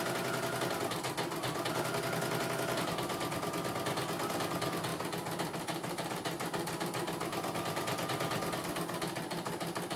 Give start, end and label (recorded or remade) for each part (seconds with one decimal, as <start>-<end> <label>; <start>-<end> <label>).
0.0-10.0 recorded

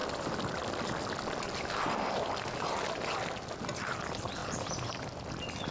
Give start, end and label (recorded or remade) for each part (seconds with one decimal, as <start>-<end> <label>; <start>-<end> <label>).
0.0-5.7 recorded

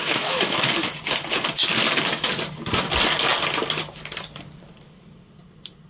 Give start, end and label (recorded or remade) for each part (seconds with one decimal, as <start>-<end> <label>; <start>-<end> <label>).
0.0-0.7 remade; 0.7-5.9 recorded

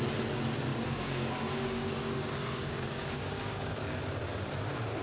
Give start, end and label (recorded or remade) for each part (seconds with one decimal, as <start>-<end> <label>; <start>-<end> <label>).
0.0-0.7 recorded; 0.7-3.7 remade; 3.7-5.0 recorded